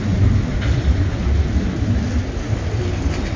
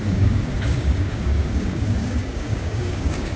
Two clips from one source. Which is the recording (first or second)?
first